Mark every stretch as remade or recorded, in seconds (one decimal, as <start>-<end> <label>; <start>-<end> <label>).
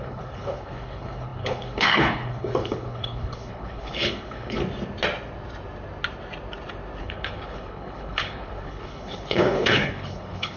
0.0-4.6 remade; 4.6-7.0 recorded; 7.0-10.6 remade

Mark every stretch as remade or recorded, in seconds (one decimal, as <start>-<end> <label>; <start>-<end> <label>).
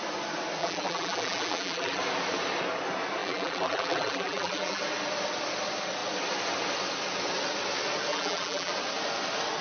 0.0-0.6 recorded; 0.6-2.0 remade; 2.0-3.2 recorded; 3.2-4.8 remade; 4.8-8.1 recorded; 8.1-8.7 remade; 8.7-9.6 recorded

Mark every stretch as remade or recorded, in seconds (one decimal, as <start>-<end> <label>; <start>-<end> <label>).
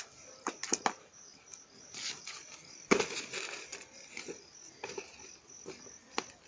0.0-6.5 recorded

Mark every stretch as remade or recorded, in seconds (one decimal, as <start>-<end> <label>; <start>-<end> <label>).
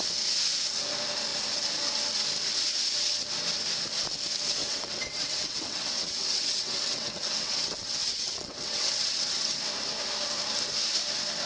0.0-4.6 recorded; 4.6-9.6 remade; 9.6-11.5 recorded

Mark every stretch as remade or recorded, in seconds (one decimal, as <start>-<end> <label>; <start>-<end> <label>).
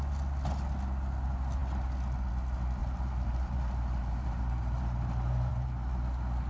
0.0-2.8 recorded; 2.8-4.8 remade; 4.8-6.5 recorded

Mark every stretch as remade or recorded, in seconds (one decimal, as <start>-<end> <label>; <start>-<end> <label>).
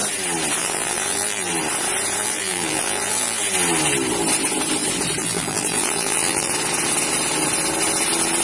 0.0-0.6 recorded; 0.6-1.5 remade; 1.5-2.2 recorded; 2.2-3.4 remade; 3.4-5.2 recorded; 5.2-6.5 remade; 6.5-8.4 recorded